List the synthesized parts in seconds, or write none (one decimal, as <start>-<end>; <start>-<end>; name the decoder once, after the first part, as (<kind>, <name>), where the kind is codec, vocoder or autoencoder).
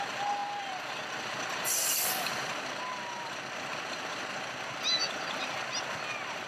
none